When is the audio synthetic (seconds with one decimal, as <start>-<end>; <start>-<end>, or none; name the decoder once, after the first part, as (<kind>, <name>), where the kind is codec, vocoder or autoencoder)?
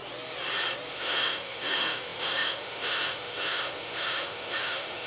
0.9-5.1 (autoencoder, DAC-VAE)